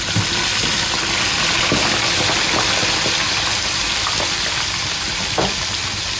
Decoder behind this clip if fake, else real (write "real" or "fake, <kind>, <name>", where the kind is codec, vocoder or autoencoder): real